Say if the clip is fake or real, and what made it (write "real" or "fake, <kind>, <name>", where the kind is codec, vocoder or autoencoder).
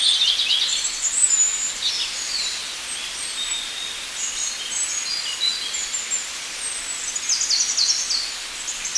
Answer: real